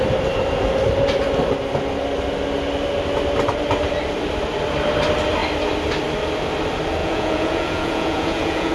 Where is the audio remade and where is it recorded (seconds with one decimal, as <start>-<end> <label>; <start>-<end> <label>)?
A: 0.0-7.0 recorded; 7.0-8.7 remade